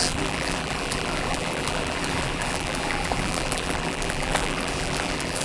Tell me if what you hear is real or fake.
fake